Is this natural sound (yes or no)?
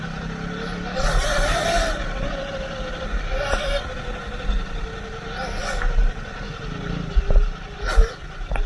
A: yes